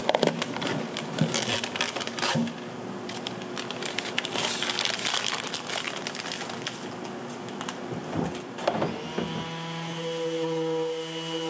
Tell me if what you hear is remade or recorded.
recorded